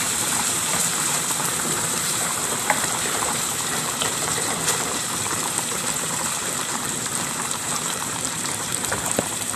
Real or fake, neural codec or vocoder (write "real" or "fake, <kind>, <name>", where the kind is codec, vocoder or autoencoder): fake, vocoder, BigVGAN v2